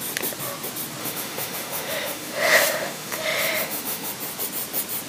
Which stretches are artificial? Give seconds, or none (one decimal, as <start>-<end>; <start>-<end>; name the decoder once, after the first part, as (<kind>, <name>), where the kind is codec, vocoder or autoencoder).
1.0-4.1 (autoencoder, DAC-VAE)